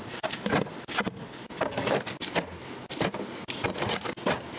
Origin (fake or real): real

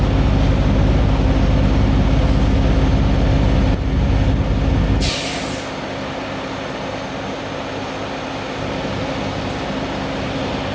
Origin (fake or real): real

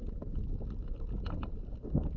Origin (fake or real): real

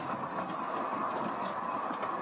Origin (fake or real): real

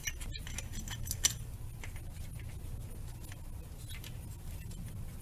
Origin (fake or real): real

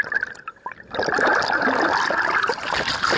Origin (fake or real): real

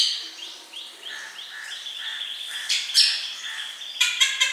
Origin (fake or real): fake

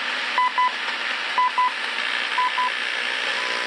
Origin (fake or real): real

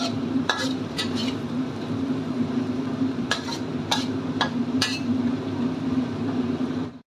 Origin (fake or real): fake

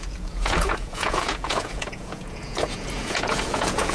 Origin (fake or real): fake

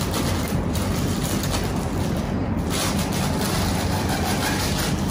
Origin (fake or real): real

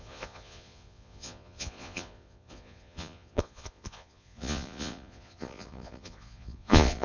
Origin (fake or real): fake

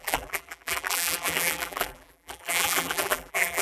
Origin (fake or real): fake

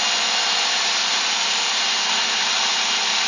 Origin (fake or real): real